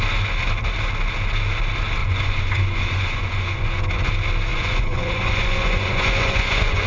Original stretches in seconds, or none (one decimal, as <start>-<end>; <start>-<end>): 0.0-2.0; 4.1-4.5